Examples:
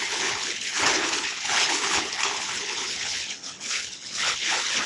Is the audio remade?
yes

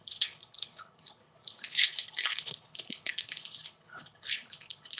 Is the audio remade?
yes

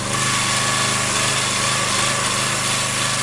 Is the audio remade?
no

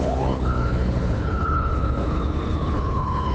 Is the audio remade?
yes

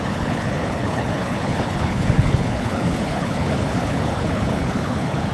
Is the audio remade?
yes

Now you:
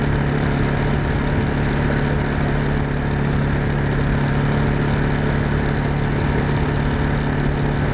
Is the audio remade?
no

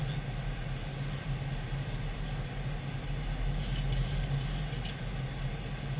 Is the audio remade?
no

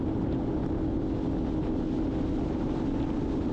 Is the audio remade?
no